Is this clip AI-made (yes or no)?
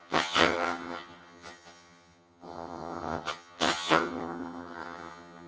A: yes